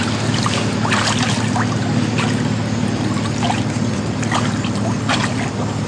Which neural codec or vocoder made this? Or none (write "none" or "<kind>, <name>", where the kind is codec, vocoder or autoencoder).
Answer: none